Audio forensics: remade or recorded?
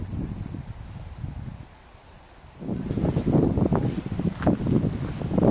recorded